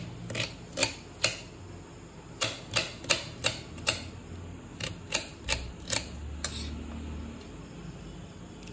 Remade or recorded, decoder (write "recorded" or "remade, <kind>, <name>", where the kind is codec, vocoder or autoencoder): recorded